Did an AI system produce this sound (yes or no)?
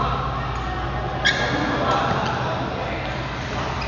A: no